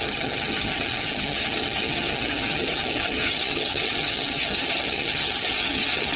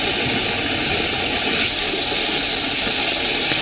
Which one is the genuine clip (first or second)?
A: second